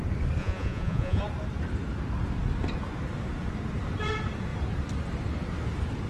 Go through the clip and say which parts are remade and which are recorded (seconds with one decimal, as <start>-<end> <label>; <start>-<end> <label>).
0.0-0.4 recorded; 0.4-1.2 remade; 1.2-6.1 recorded